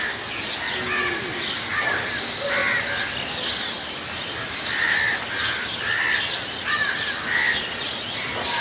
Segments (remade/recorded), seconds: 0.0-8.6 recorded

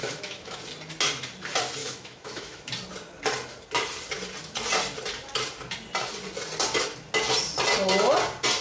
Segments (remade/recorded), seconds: 0.0-0.6 remade; 0.6-1.8 recorded; 1.8-2.7 remade; 2.7-8.6 recorded

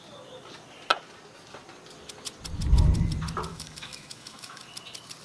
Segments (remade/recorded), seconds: 0.0-3.5 recorded; 3.5-4.6 remade; 4.6-5.2 recorded

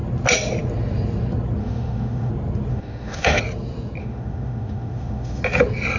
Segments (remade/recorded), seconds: 0.0-1.6 recorded; 1.6-2.3 remade; 2.3-2.7 recorded; 2.7-3.4 remade; 3.4-4.0 recorded; 4.0-5.4 remade; 5.4-6.0 recorded

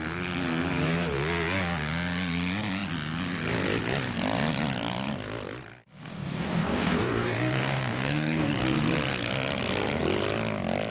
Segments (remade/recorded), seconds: 0.0-6.0 recorded; 6.0-8.5 remade; 8.5-10.9 recorded

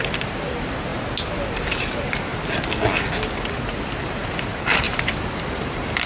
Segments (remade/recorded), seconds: 0.0-0.9 remade; 0.9-1.5 recorded; 1.5-2.3 remade; 2.3-3.5 recorded; 3.5-6.1 remade

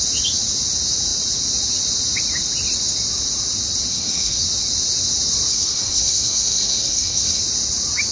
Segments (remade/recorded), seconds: 0.0-3.9 recorded; 3.9-4.4 remade; 4.4-5.5 recorded; 5.5-7.4 remade; 7.4-8.1 recorded

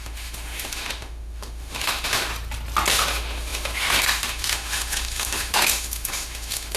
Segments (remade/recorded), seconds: 0.0-2.3 remade; 2.3-2.9 recorded; 2.9-6.8 remade